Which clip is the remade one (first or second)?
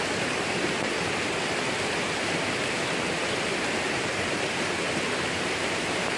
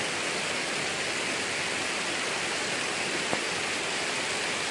first